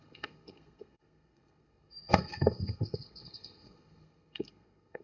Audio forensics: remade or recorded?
remade